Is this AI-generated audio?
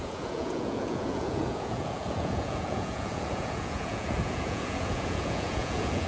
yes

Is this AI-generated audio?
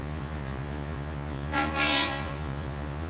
yes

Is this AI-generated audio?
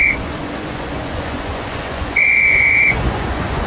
yes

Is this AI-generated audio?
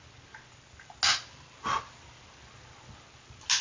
no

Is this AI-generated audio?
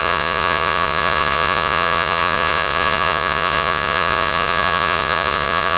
yes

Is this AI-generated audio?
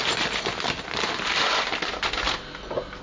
no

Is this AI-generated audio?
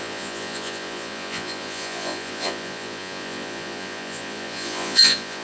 yes